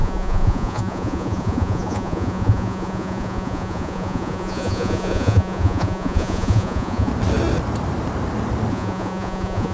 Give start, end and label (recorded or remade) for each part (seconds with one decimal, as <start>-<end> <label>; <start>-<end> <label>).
0.0-7.1 remade; 7.1-8.7 recorded; 8.7-9.7 remade